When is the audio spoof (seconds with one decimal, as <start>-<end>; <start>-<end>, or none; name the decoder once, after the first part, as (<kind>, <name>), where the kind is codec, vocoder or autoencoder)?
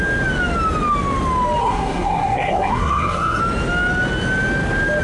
1.6-3.4 (codec, SNAC)